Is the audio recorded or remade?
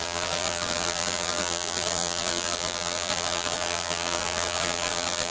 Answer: remade